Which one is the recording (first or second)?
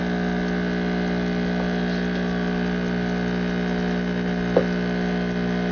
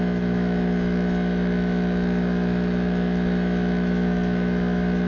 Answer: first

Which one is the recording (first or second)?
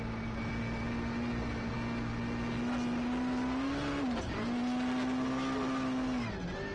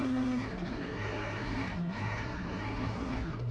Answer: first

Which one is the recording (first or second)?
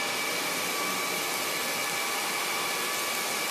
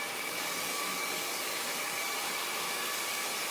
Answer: first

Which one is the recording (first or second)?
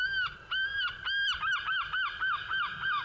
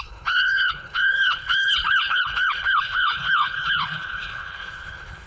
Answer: first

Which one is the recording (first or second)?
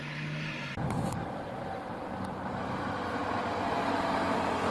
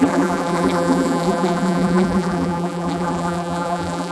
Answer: first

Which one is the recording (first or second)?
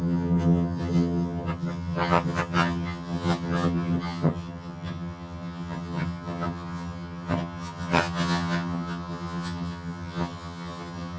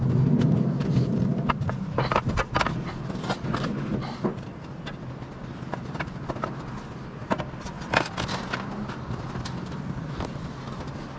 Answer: second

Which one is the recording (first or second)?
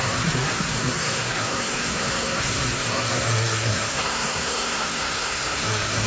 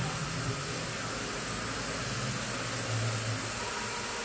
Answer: second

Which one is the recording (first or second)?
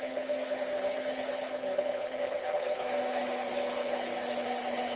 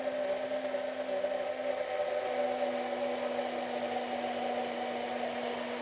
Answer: second